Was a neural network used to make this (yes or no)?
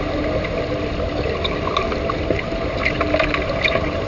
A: no